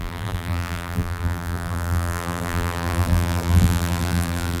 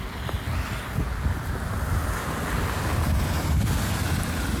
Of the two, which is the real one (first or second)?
second